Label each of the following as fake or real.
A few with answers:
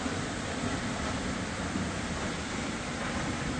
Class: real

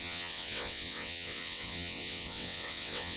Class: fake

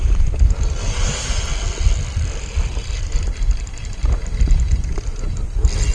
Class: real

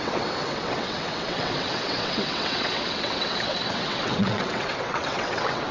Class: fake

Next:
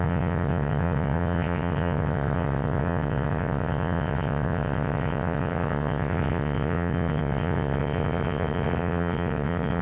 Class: fake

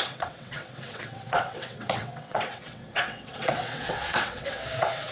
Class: fake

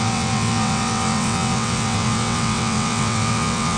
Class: fake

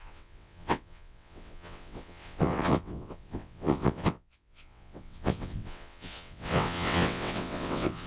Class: fake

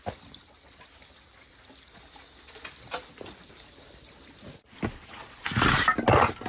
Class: real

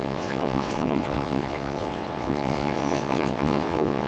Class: fake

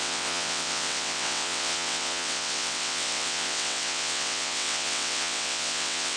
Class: fake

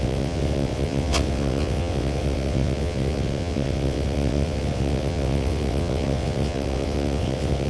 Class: fake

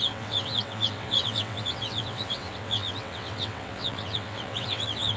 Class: fake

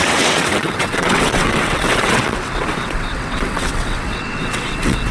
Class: fake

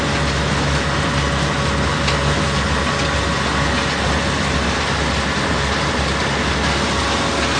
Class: real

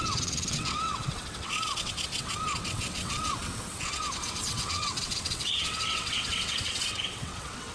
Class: fake